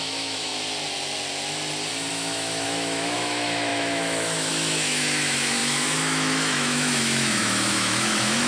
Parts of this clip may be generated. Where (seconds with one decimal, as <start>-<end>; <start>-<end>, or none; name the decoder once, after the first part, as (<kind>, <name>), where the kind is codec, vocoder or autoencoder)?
0.0-0.5 (autoencoder, DAC-VAE); 2.1-8.5